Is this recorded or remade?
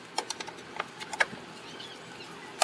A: recorded